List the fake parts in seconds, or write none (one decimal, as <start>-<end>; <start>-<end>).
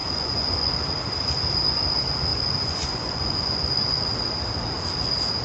0.0-0.7; 2.3-4.1